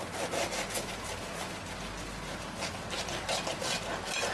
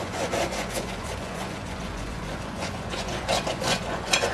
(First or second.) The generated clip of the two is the second